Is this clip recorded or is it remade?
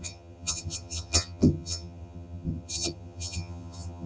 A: remade